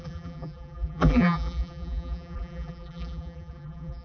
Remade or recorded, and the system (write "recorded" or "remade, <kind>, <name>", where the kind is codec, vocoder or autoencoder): remade, vocoder, BigVGAN v2